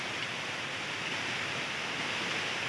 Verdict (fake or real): real